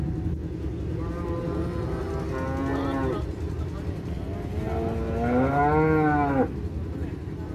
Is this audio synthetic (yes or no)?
no